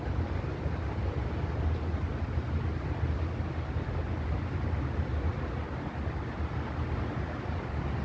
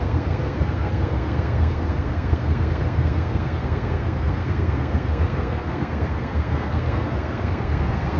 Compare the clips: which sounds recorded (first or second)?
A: first